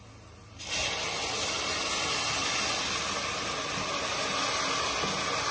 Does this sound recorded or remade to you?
recorded